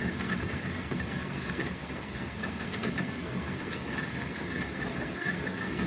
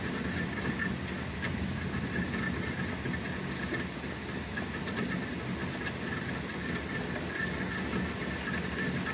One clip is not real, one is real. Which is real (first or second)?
second